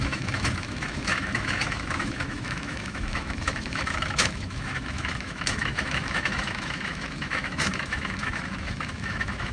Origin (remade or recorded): remade